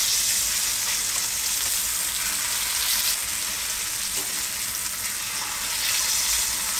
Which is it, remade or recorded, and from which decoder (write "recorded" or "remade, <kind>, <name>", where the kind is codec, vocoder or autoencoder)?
recorded